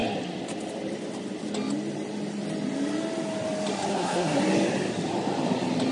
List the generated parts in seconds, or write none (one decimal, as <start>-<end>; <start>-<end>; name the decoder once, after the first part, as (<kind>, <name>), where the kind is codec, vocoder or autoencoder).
3.9-4.4 (codec, SNAC)